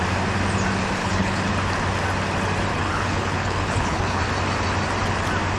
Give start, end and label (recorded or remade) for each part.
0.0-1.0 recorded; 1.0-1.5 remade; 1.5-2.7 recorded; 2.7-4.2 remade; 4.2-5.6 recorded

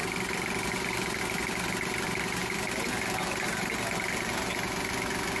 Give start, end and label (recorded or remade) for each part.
0.0-5.4 recorded

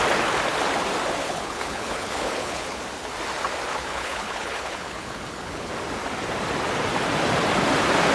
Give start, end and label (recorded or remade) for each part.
0.0-1.2 recorded; 1.2-2.8 remade; 2.8-3.7 recorded; 3.7-5.7 remade; 5.7-8.1 recorded

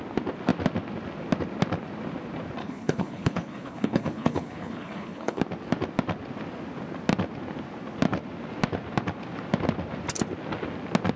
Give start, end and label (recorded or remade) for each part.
0.0-2.6 recorded; 2.6-5.4 remade; 5.4-11.2 recorded

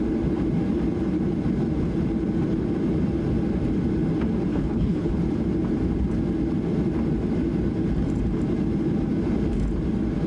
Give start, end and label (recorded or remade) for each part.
0.0-4.5 recorded; 4.5-5.1 remade; 5.1-10.3 recorded